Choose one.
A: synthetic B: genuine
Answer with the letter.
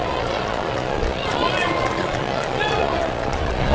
A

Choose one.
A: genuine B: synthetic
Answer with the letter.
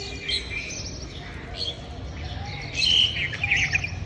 A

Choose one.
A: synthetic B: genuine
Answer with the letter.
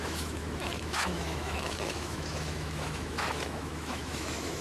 A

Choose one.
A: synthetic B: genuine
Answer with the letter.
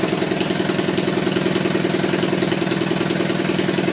B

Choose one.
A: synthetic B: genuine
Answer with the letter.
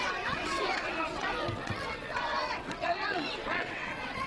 A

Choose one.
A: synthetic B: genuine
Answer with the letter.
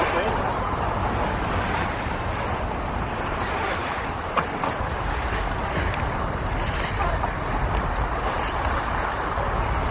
B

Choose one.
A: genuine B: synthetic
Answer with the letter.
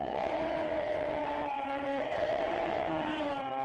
B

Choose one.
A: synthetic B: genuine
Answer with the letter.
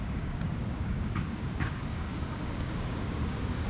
A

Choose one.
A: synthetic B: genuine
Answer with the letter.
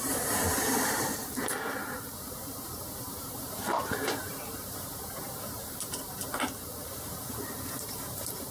A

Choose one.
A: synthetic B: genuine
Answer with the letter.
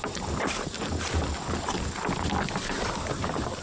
B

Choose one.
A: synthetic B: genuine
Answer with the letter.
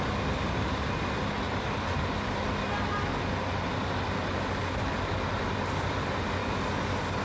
B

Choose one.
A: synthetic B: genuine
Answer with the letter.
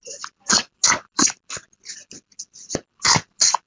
B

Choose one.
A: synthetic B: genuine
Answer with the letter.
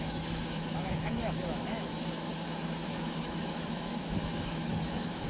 A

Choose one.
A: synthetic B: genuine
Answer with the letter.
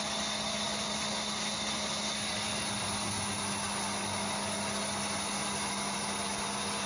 B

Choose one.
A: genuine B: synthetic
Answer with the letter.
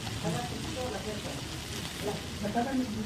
A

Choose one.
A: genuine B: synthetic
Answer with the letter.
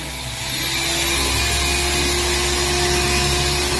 A